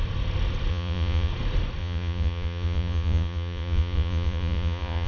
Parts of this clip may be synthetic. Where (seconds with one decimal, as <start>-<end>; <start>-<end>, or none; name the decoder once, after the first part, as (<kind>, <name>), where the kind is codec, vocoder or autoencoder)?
0.7-1.3 (vocoder, Vocos); 1.8-5.1